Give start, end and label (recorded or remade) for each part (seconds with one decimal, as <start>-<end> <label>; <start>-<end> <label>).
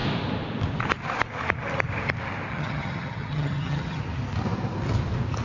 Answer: 0.0-2.5 recorded; 2.5-4.0 remade; 4.0-5.4 recorded